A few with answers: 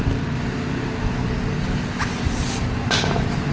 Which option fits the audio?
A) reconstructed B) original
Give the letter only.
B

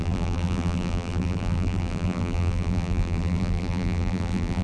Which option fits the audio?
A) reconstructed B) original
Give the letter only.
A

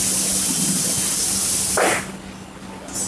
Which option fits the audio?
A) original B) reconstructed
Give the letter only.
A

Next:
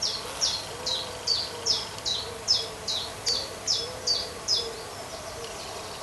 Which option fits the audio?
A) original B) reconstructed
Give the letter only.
A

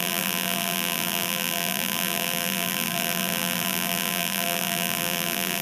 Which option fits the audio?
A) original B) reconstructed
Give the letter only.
B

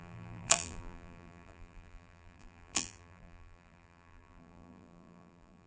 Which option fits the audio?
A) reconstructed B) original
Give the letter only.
A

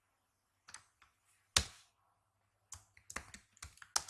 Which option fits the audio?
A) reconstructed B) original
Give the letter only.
B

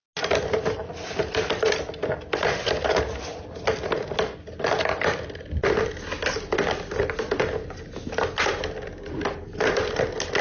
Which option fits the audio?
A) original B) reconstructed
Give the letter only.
A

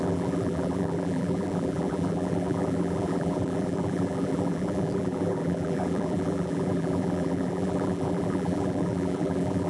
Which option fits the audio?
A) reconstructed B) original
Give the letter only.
A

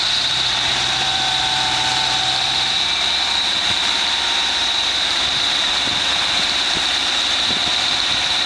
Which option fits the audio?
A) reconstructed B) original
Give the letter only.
A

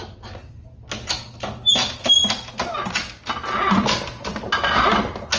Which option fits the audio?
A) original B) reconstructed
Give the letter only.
A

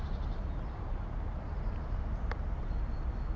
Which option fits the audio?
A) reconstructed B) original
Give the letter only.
A